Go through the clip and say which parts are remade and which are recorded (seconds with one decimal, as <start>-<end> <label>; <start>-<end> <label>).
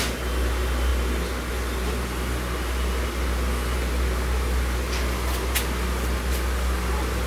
0.0-7.3 recorded